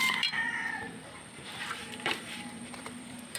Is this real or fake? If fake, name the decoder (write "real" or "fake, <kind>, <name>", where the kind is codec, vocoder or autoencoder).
fake, vocoder, BigVGAN v2